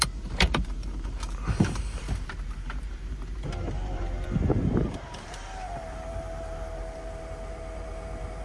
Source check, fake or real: fake